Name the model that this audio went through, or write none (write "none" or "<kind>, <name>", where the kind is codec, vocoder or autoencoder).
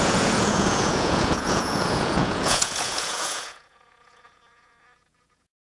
vocoder, Vocos